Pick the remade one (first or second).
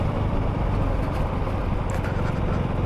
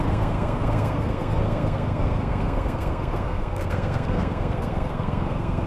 second